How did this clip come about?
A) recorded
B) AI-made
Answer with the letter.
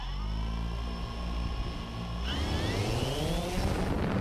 A